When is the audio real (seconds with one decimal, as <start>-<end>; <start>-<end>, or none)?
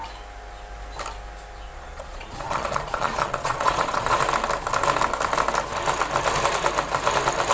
0.0-1.7; 4.2-7.5